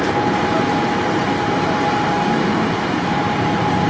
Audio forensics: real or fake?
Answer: fake